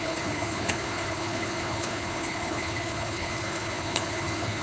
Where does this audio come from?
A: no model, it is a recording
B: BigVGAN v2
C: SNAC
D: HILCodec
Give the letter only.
D